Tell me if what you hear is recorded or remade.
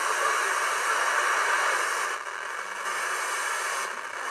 recorded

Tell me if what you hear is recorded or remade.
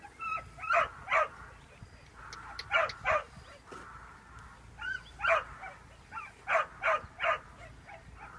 recorded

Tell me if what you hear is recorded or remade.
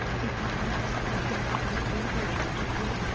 recorded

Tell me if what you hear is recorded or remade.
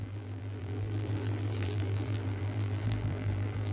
remade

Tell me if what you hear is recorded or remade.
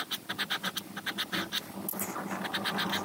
recorded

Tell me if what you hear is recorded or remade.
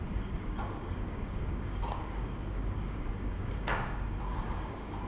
remade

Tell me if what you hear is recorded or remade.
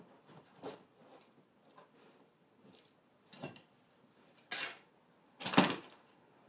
recorded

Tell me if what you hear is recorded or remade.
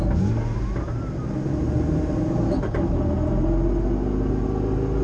recorded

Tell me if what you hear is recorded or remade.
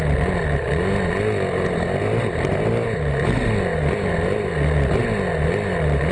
recorded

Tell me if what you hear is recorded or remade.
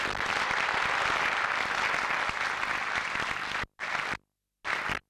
recorded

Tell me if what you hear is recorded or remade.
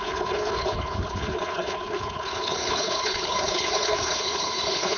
remade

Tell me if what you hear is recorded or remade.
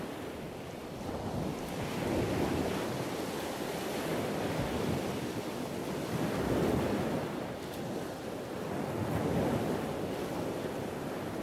recorded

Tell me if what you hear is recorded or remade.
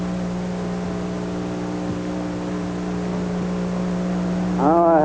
recorded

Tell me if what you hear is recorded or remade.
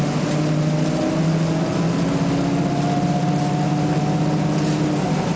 recorded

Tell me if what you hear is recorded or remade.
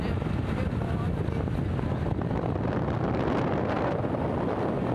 recorded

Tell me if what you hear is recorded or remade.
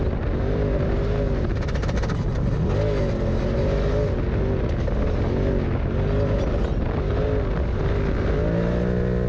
recorded